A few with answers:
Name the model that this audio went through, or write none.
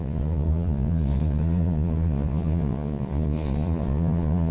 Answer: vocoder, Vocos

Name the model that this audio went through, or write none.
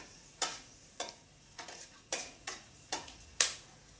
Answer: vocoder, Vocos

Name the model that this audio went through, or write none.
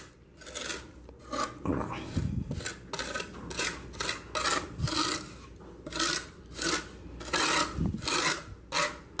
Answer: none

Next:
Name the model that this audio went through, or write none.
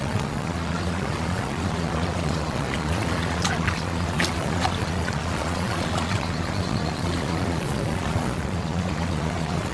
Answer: vocoder, Vocos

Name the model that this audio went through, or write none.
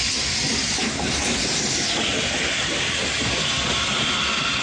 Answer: none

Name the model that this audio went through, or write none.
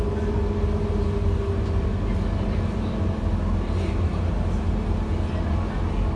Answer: none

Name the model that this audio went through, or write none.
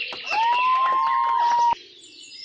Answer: none